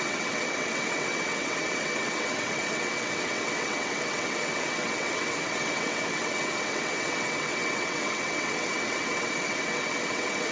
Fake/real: fake